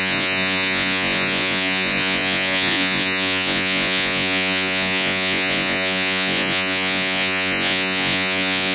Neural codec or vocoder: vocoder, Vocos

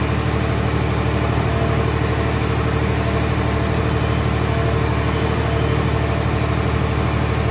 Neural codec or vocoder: none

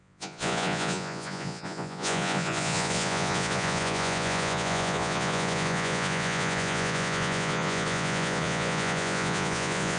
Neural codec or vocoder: vocoder, Vocos